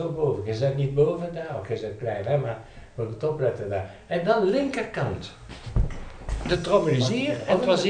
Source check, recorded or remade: recorded